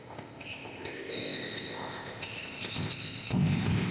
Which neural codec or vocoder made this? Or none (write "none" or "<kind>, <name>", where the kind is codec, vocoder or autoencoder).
codec, ZipCodec